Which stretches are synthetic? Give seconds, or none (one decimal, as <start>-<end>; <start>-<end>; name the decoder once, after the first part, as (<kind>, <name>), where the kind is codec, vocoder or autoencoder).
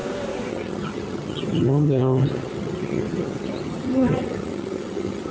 0.5-5.3 (vocoder, HiFi-GAN)